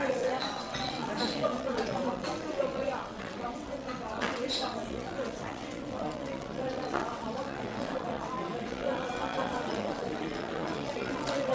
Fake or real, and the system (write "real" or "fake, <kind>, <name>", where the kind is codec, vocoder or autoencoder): fake, vocoder, WaveNeXt